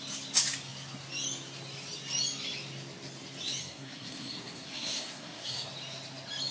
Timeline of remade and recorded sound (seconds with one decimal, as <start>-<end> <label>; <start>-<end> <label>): 0.0-3.6 recorded; 3.6-5.7 remade; 5.7-6.5 recorded